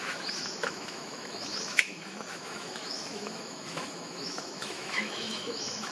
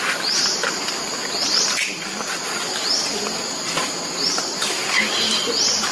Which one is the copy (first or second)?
first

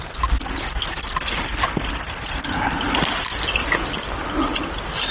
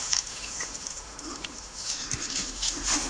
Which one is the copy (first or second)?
second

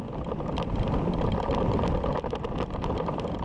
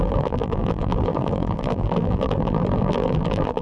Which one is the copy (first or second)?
second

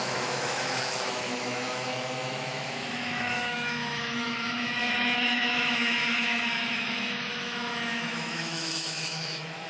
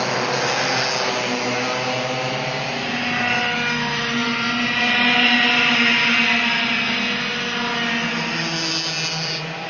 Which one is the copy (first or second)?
first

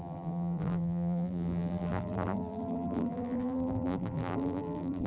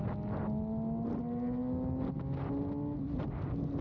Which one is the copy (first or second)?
first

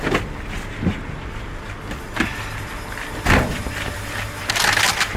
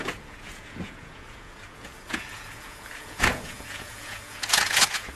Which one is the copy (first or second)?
second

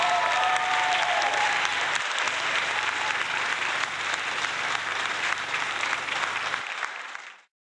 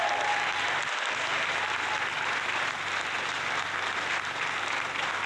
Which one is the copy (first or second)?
first